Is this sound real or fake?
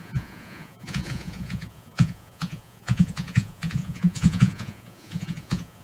fake